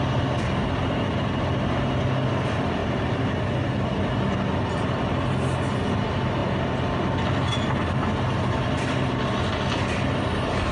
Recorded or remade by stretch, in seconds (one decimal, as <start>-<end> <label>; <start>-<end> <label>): 0.0-2.8 recorded; 2.8-3.4 remade; 3.4-10.7 recorded